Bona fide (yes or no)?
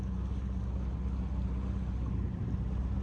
yes